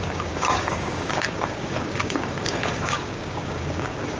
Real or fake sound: fake